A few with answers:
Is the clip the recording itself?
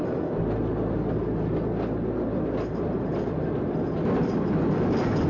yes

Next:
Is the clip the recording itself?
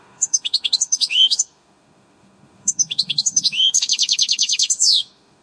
no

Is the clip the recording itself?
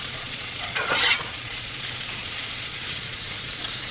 no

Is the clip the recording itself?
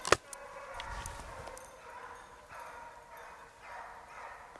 yes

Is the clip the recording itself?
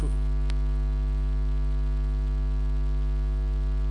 yes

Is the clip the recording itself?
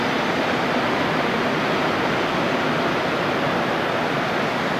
no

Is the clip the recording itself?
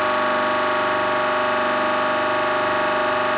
yes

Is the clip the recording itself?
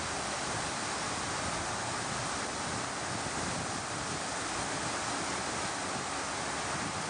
yes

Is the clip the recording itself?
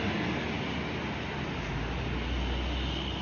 yes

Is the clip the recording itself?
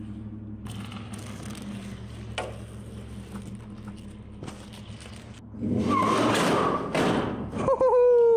yes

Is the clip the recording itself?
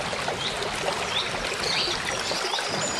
yes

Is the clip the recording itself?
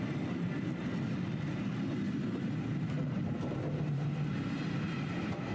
yes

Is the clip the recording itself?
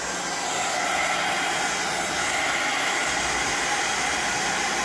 yes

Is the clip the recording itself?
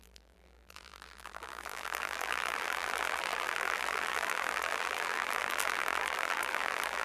no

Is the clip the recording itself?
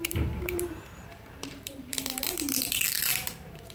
no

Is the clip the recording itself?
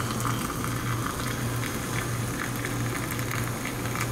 yes